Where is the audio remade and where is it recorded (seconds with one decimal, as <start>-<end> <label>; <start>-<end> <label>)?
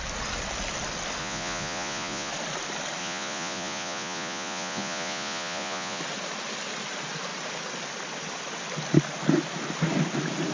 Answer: 0.0-1.2 recorded; 1.2-2.3 remade; 2.3-3.0 recorded; 3.0-6.0 remade; 6.0-10.5 recorded